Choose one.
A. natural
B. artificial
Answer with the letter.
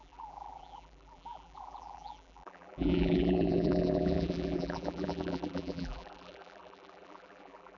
B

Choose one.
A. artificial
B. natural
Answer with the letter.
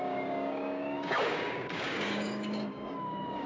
A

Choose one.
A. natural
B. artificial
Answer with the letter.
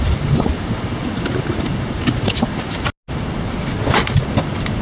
A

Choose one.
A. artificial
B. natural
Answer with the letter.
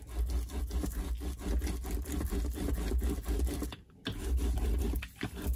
B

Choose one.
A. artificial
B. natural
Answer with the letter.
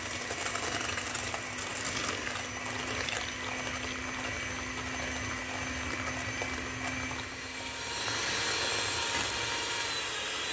B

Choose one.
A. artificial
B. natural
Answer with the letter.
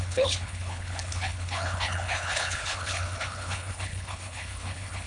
A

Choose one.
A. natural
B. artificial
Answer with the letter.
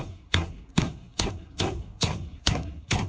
B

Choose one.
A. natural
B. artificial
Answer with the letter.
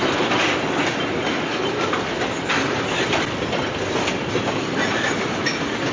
A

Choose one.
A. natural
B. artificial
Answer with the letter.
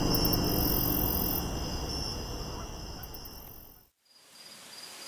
A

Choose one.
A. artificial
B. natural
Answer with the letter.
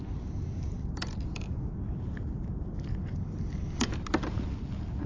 B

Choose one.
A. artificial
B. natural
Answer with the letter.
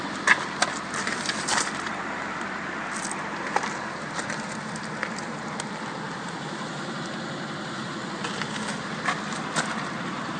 A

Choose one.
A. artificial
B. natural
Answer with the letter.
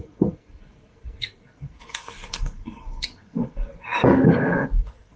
A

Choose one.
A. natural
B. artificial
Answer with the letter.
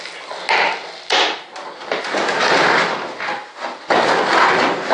A